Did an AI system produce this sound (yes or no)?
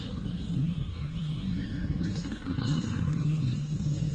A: yes